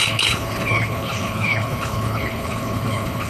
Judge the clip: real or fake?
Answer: fake